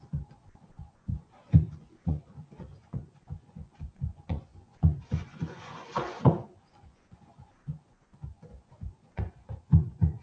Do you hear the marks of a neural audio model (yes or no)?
yes